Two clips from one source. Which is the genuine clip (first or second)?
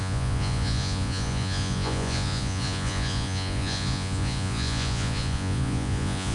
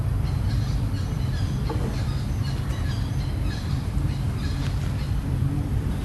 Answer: second